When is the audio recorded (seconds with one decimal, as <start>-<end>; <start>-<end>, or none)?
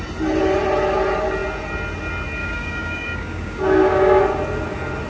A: 0.0-2.4; 4.2-5.1